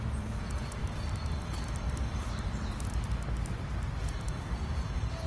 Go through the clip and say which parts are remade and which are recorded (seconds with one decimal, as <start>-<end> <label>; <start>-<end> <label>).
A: 0.0-0.8 remade; 0.8-4.0 recorded; 4.0-5.3 remade